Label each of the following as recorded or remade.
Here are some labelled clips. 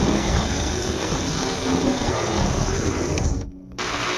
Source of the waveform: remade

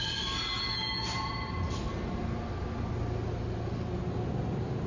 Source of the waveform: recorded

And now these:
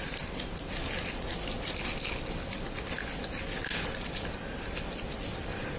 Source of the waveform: recorded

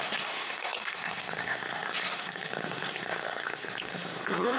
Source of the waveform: remade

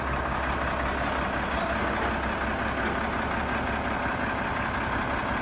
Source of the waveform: recorded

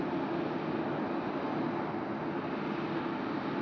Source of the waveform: recorded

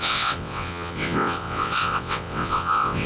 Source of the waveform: remade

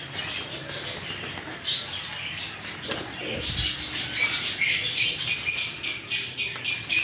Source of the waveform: recorded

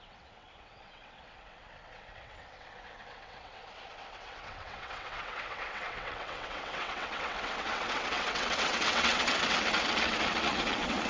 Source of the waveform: remade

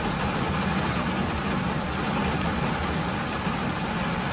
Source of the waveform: recorded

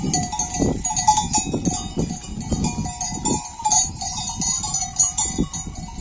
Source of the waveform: recorded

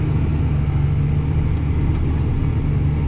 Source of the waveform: recorded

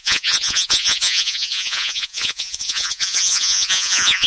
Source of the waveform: remade